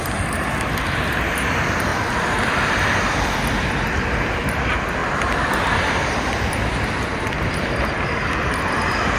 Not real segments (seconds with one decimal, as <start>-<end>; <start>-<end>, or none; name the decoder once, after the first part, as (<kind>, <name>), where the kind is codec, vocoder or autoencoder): 1.9-3.9 (vocoder, BigVGAN v2); 5.0-8.6